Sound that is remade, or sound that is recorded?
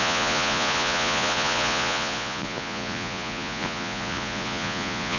remade